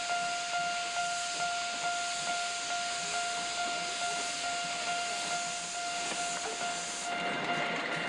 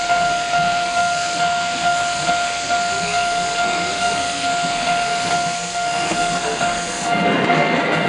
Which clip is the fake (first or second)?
second